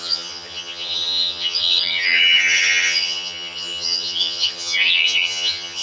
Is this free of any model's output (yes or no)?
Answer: no